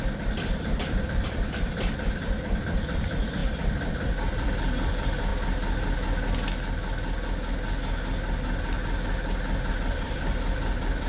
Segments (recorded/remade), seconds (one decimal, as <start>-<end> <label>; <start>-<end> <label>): 0.0-3.4 remade; 3.4-3.9 recorded; 3.9-5.3 remade; 5.3-9.7 recorded; 9.7-11.1 remade